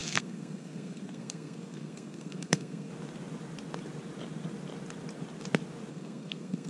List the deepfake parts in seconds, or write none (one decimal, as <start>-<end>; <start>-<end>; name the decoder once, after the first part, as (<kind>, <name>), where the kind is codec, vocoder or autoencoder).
0.0-2.9 (codec, SNAC); 5.9-6.7